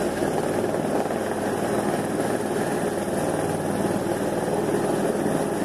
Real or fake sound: real